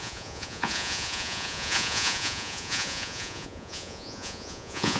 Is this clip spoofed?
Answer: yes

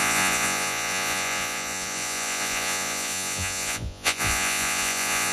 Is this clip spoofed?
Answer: yes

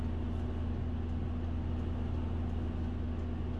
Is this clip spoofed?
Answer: no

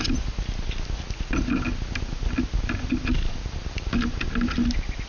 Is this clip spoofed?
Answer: no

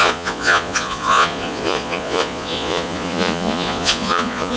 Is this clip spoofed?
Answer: yes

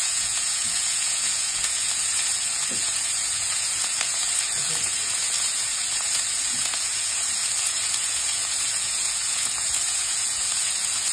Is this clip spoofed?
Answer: yes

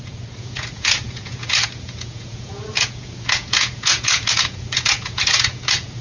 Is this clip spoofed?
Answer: yes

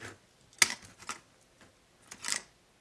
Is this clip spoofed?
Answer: no